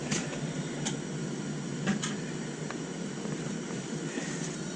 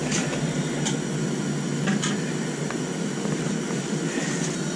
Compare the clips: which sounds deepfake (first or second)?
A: first